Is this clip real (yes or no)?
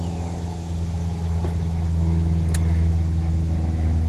no